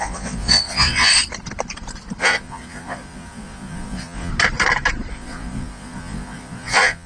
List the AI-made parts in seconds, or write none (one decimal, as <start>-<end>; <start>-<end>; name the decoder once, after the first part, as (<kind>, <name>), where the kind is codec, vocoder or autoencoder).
0.0-1.1 (vocoder, Vocos); 2.2-4.3; 5.1-7.1